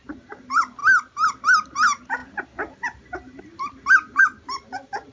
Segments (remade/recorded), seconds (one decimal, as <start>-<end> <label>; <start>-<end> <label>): 0.0-0.8 remade; 0.8-1.4 recorded; 1.4-5.1 remade